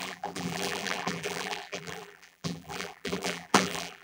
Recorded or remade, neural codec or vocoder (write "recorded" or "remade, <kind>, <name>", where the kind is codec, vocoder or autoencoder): remade, vocoder, BigVGAN v2